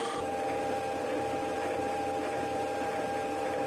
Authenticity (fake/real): fake